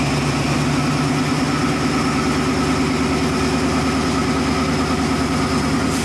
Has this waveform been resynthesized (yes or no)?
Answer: no